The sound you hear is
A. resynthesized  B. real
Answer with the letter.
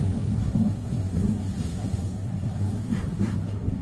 A